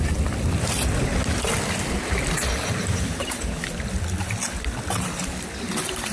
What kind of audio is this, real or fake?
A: real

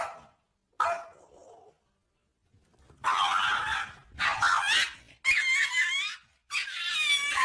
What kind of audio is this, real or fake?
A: real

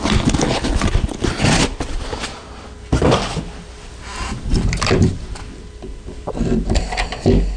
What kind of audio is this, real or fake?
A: real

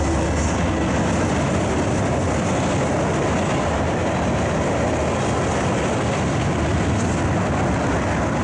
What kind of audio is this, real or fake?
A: real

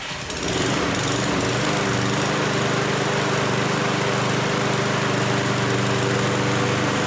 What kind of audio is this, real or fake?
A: real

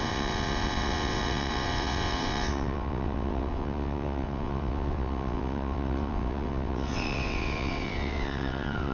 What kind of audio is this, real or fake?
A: fake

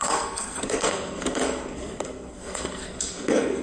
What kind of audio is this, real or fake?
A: fake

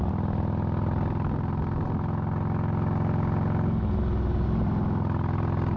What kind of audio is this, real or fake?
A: real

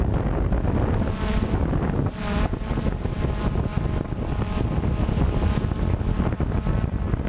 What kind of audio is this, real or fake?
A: real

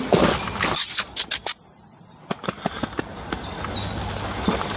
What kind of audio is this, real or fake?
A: real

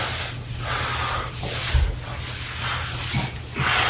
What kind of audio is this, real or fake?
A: real